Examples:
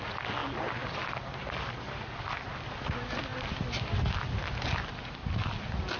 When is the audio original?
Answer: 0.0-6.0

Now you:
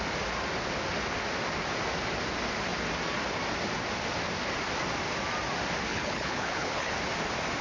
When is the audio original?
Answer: 0.0-5.9; 6.9-7.6

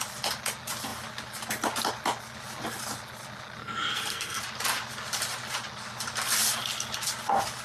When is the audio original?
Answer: 0.0-3.6; 4.4-7.6

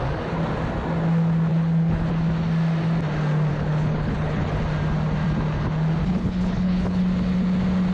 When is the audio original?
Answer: 0.0-1.5; 2.1-3.5; 4.6-6.0; 7.0-7.9

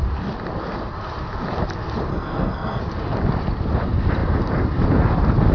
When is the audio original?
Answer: 0.0-2.1; 2.8-5.5

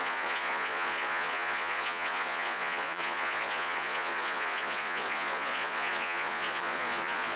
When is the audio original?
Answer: none